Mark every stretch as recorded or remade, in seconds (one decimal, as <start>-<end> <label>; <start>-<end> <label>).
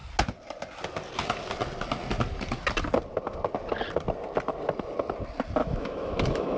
0.0-5.6 recorded; 5.6-6.6 remade